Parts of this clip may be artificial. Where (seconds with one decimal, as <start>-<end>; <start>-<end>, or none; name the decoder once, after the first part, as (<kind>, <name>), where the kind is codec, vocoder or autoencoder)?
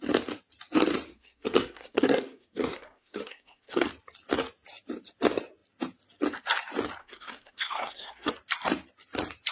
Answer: 1.1-3.9 (codec, SNAC); 7.0-8.3